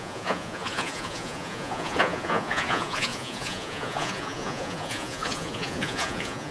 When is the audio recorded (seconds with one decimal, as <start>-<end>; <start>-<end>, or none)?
none